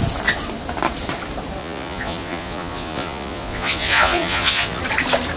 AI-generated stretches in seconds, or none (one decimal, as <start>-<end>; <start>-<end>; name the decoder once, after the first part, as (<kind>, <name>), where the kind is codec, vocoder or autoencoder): 1.6-4.8 (vocoder, Vocos)

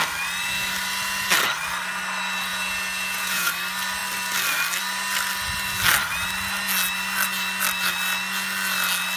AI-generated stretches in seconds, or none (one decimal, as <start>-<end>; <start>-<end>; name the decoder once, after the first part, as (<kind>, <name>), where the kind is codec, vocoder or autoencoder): 2.5-3.5 (vocoder, Vocos)

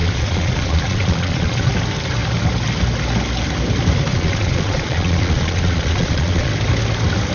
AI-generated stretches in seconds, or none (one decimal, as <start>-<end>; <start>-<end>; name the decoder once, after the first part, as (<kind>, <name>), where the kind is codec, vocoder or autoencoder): 0.0-1.7 (vocoder, Vocos); 4.1-6.5

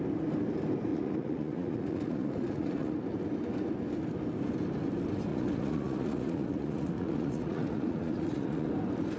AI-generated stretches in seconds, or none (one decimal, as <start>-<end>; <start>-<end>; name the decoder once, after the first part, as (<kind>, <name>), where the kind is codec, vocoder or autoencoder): 0.9-2.9 (vocoder, Vocos); 5.3-8.7

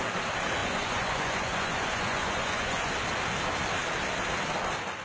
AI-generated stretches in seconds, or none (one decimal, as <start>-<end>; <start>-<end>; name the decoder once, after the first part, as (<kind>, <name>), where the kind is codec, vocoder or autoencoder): 0.6-2.9 (vocoder, Vocos)

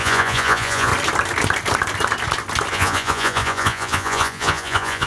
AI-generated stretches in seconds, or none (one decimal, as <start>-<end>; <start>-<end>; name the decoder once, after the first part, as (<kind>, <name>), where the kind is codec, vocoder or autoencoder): 0.0-0.9 (vocoder, Vocos); 2.7-5.1

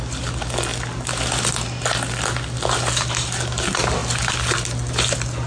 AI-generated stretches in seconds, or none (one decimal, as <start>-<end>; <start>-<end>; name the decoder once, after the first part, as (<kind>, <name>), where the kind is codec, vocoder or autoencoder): none

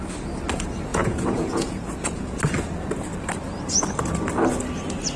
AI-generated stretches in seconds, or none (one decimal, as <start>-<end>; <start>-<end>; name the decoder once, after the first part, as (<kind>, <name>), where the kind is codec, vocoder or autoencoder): 0.9-2.4 (vocoder, Vocos)